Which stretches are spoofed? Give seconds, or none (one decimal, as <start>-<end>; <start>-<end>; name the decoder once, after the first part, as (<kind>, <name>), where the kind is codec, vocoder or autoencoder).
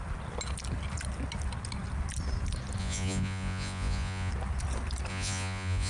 2.8-4.3 (vocoder, Vocos); 5.1-5.9